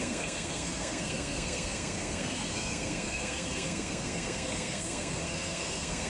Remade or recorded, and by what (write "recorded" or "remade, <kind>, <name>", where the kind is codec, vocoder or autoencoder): remade, codec, SNAC